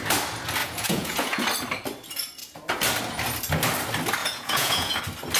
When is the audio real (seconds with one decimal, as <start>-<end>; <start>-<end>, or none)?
0.0-0.6; 1.4-4.2; 5.0-5.4